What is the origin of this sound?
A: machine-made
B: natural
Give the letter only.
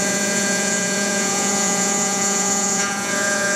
A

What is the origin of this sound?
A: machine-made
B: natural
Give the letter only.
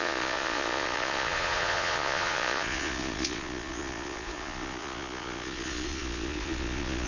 A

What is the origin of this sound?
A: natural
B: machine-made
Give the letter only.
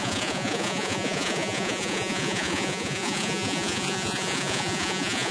B